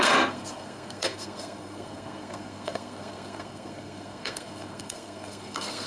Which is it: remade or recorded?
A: remade